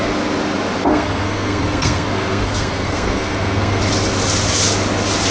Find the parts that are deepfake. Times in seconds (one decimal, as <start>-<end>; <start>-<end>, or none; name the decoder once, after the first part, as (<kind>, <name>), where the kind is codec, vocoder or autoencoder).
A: 0.9-3.8 (codec, SNAC)